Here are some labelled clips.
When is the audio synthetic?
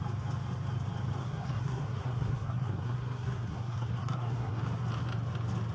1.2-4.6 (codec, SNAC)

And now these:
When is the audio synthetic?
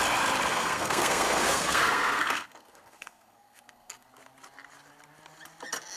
0.5-4.1 (codec, SNAC)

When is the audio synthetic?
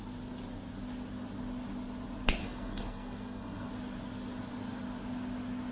2.4-3.7 (codec, SNAC)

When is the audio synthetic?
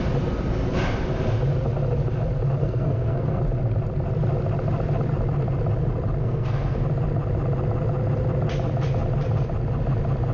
2.6-3.4 (codec, SNAC); 6.2-6.8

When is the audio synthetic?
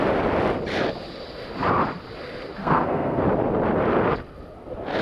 2.6-3.2 (codec, SNAC)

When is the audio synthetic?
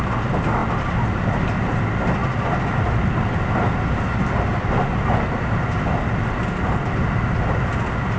none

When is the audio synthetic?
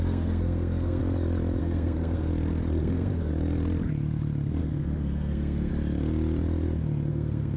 0.0-1.0 (codec, SNAC); 1.6-2.3; 2.8-3.3; 4.6-5.7; 7.1-7.6